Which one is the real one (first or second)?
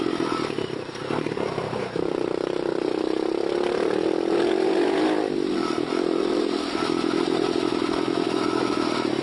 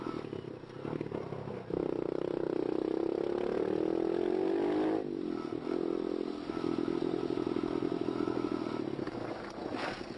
second